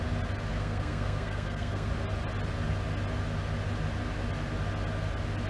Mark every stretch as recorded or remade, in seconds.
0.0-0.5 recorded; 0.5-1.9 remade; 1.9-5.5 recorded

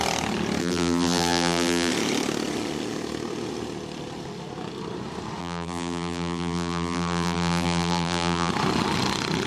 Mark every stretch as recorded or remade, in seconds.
0.0-0.6 recorded; 0.6-1.9 remade; 1.9-5.4 recorded; 5.4-8.5 remade; 8.5-9.5 recorded